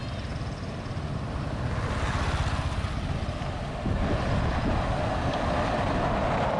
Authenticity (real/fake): real